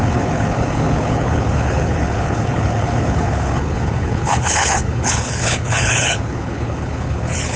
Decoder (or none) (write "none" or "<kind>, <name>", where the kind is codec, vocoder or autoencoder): codec, HILCodec